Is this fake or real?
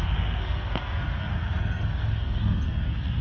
fake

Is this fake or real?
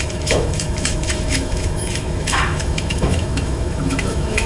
fake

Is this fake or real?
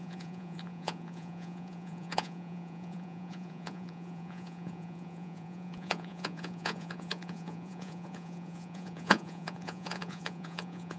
fake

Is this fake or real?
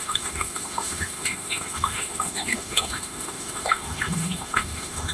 fake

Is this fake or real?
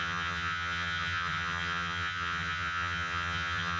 fake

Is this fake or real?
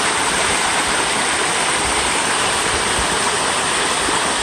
fake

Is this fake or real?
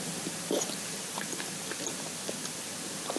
real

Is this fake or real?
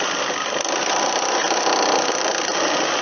fake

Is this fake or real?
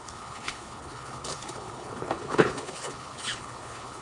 fake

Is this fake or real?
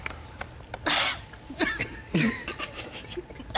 real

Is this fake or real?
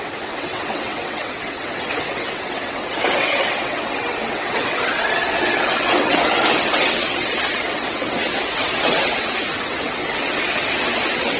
fake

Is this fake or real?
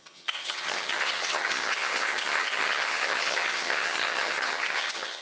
fake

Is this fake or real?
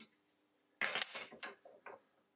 real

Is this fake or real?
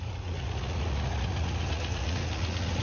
fake